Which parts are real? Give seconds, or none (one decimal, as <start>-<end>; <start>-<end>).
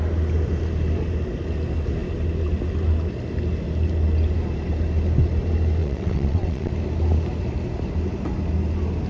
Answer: 0.0-5.8; 6.7-9.1